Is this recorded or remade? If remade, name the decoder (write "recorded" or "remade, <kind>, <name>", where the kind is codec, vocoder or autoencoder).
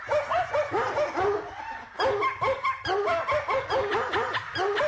recorded